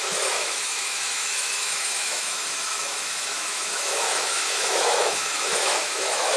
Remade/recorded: remade